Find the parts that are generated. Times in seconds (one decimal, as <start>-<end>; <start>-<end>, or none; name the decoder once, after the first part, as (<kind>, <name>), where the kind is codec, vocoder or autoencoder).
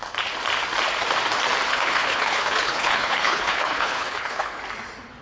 1.7-4.6 (codec, HILCodec)